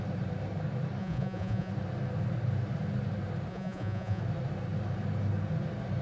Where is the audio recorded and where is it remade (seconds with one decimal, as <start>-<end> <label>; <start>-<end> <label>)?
0.0-1.0 recorded; 1.0-1.7 remade; 1.7-3.5 recorded; 3.5-4.2 remade; 4.2-6.0 recorded